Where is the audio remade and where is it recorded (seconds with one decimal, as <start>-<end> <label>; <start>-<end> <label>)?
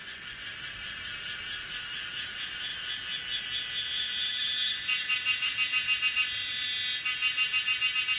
0.0-0.5 remade; 0.5-8.2 recorded